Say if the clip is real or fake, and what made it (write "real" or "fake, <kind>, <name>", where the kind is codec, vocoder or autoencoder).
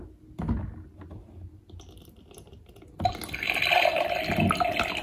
real